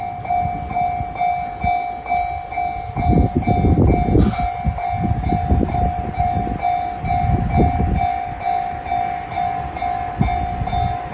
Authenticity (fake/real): real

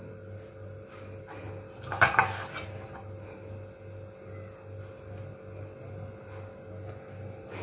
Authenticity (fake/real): real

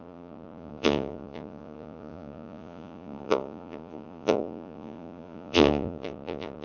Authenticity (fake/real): fake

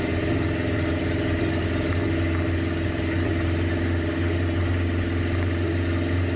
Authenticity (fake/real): real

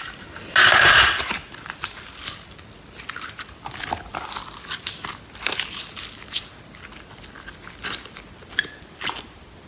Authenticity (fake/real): real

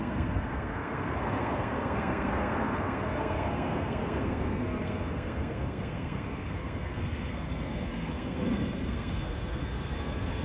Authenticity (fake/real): fake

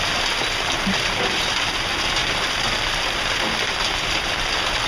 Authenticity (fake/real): real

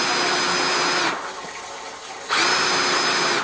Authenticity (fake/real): real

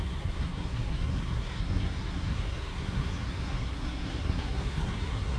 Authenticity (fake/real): fake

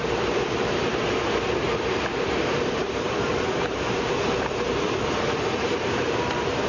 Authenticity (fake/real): fake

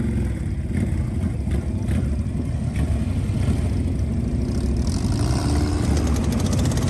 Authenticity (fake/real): real